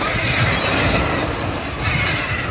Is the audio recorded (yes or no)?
yes